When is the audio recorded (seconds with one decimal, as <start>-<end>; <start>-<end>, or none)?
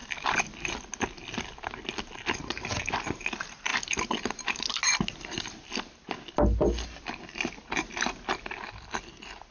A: 0.0-9.5